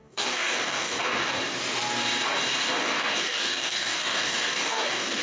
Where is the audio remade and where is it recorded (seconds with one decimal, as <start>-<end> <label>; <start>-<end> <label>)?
0.0-1.4 remade; 1.4-2.8 recorded; 2.8-5.2 remade